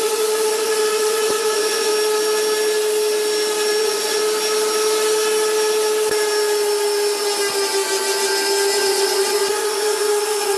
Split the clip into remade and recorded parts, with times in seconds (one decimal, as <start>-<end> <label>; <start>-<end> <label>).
0.0-1.9 remade; 1.9-3.8 recorded; 3.8-4.2 remade; 4.2-8.7 recorded; 8.7-10.6 remade